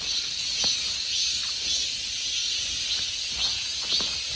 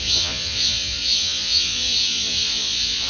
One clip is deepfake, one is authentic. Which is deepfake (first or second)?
second